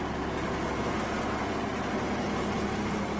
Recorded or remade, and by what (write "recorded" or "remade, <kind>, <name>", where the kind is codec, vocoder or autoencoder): recorded